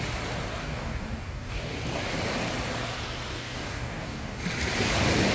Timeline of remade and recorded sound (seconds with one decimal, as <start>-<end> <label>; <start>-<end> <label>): 0.0-0.6 recorded; 0.6-1.8 remade; 1.8-3.3 recorded; 3.3-4.4 remade; 4.4-5.3 recorded

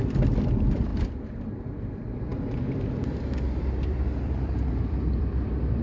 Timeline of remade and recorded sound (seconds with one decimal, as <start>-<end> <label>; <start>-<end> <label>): 0.0-5.8 remade

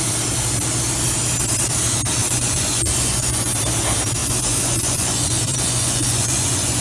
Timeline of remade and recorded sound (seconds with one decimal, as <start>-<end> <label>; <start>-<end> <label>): 0.0-2.2 recorded; 2.2-3.5 remade; 3.5-4.2 recorded; 4.2-6.8 remade

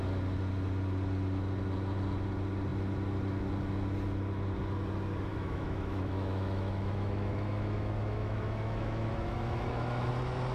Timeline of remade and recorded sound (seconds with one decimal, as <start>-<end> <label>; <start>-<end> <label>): 0.0-5.3 recorded; 5.3-10.1 remade; 10.1-10.5 recorded

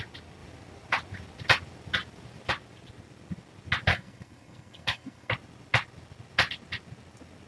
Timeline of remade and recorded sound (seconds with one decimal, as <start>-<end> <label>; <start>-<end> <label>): 0.0-3.9 recorded; 3.9-5.3 remade; 5.3-7.5 recorded

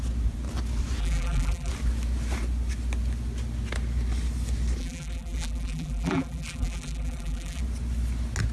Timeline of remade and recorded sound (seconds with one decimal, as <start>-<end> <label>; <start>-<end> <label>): 0.0-1.0 recorded; 1.0-1.7 remade; 1.7-4.8 recorded; 4.8-7.6 remade; 7.6-8.5 recorded

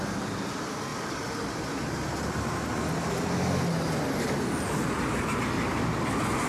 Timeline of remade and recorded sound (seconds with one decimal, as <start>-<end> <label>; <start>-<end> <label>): 0.0-0.9 recorded; 0.9-2.4 remade; 2.4-6.5 recorded